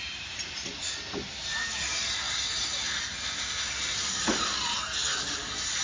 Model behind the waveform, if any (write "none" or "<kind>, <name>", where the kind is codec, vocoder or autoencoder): vocoder, BigVGAN v2